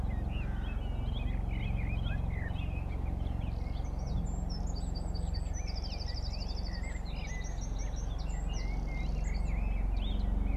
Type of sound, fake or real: real